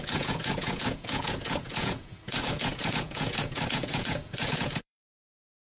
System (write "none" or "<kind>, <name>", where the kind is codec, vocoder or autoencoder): vocoder, Vocos